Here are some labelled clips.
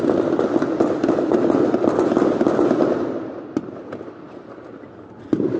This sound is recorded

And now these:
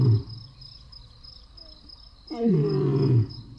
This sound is recorded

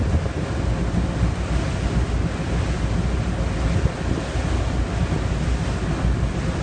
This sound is recorded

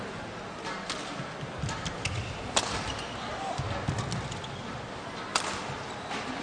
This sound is recorded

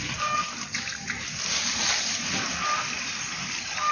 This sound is recorded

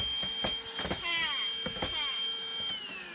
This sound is recorded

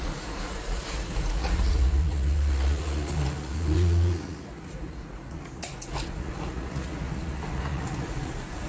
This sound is remade